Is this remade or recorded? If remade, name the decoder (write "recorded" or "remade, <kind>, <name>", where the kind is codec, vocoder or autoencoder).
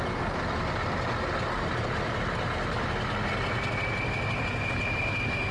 recorded